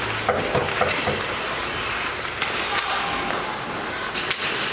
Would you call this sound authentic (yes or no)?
yes